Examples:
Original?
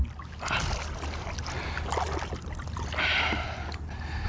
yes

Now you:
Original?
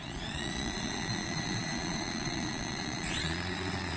no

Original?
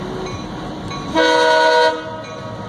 yes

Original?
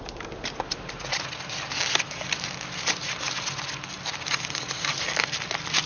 yes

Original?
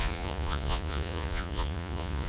no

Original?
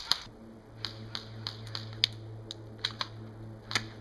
yes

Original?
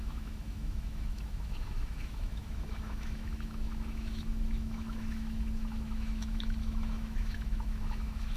no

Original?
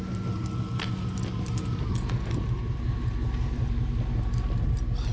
yes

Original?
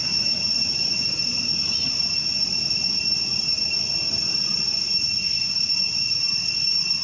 yes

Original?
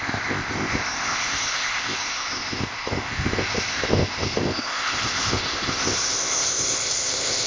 no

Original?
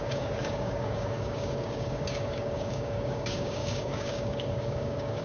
no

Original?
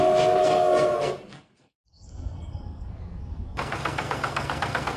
no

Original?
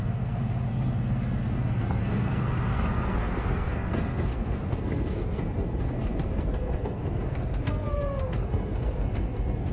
no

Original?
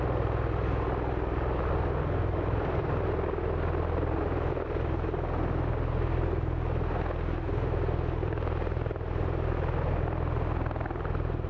yes